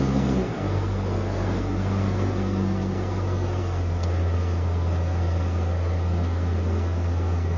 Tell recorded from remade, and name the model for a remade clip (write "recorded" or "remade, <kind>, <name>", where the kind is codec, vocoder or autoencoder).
remade, codec, SNAC